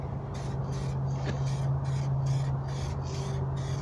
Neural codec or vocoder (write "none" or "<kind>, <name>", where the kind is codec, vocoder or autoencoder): none